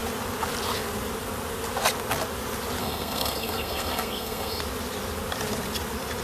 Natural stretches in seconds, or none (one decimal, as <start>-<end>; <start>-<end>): 0.0-2.8; 4.6-6.2